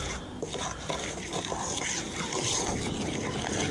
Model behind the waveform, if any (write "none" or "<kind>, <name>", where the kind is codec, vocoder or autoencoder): none